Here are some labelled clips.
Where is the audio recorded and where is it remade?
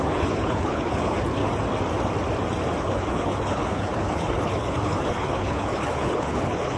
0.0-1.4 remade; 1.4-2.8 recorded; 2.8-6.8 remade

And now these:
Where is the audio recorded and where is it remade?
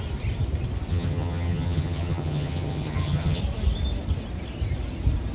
0.0-0.9 recorded; 0.9-3.4 remade; 3.4-5.3 recorded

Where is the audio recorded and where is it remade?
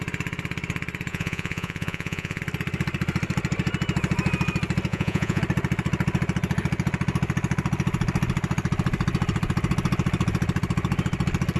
0.0-1.1 recorded; 1.1-2.4 remade; 2.4-4.9 recorded; 4.9-5.4 remade; 5.4-11.6 recorded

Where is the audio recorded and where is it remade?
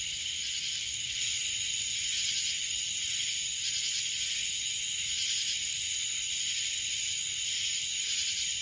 0.0-8.6 recorded